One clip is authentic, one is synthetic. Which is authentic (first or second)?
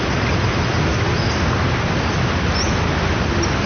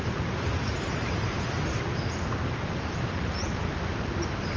first